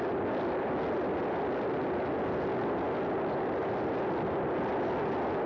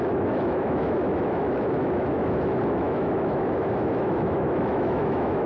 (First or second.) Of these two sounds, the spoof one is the second